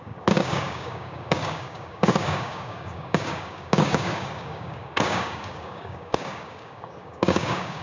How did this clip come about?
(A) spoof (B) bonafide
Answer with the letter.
A